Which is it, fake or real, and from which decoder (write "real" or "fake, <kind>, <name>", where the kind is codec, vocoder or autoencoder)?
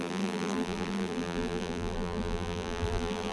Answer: fake, vocoder, BigVGAN v2